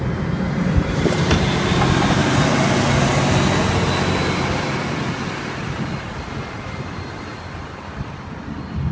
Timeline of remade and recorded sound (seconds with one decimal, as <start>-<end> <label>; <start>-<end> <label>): 0.0-8.9 recorded